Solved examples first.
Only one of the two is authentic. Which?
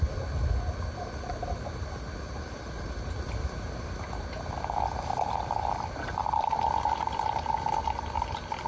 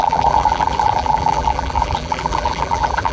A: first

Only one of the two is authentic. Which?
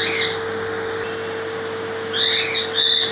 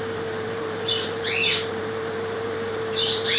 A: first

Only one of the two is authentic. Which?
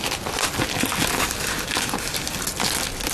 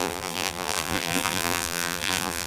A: first